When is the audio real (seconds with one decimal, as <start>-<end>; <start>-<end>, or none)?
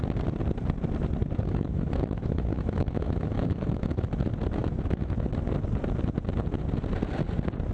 0.0-1.2; 4.1-4.6; 5.1-7.7